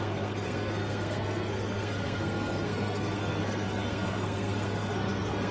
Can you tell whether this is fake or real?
fake